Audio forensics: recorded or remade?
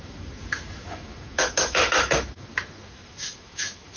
remade